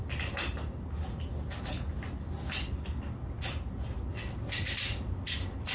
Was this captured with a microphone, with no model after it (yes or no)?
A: yes